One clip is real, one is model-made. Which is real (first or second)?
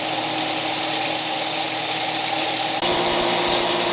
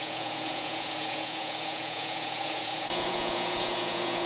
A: first